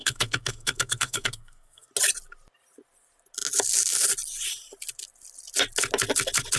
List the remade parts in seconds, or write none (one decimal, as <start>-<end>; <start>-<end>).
0.0-1.9